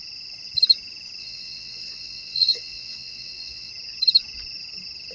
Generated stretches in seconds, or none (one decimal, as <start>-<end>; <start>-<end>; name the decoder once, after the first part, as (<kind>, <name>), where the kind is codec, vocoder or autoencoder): 1.2-3.7 (vocoder, WaveNeXt)